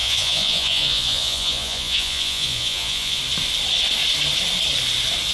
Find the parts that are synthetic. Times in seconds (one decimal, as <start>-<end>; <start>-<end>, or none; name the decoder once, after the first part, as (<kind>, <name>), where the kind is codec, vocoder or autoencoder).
0.0-3.2 (vocoder, Vocos)

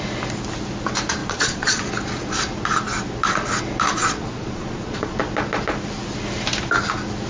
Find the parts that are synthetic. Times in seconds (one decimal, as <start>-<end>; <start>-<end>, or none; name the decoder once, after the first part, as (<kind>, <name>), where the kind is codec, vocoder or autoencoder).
1.2-1.8 (vocoder, Vocos); 4.0-5.2